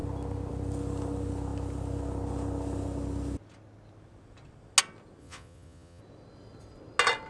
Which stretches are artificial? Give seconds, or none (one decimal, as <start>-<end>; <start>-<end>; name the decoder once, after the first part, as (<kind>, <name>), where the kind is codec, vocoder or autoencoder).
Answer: 5.2-6.0 (vocoder, Vocos)